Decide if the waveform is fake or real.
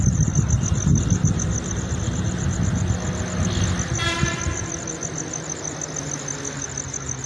real